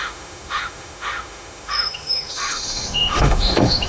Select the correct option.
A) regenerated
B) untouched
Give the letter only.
A